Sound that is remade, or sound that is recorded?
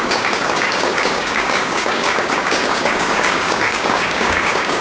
remade